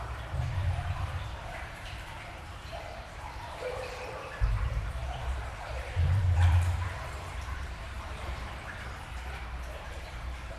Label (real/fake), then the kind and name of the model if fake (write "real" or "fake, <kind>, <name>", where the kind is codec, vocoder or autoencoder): fake, vocoder, BigVGAN v2